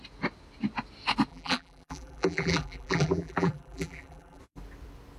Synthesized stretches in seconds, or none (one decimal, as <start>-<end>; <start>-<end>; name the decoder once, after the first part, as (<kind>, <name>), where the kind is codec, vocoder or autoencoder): 1.3-4.4 (vocoder, BigVGAN v2)